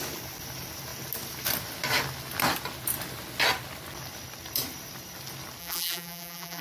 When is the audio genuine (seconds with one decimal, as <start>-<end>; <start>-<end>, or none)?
0.0-5.6